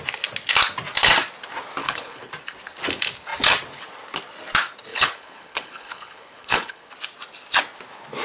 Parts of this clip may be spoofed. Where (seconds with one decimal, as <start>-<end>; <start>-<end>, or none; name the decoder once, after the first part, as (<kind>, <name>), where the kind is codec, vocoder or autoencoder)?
1.8-2.3 (codec, HILCodec); 4.9-6.9